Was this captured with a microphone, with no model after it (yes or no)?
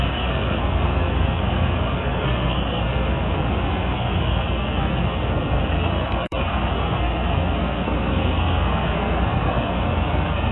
no